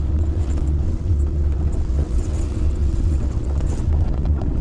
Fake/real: fake